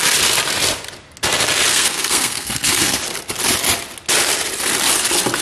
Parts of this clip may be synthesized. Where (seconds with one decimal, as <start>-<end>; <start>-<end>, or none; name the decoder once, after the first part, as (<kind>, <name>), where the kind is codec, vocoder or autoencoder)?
1.7-3.0 (codec, SNAC)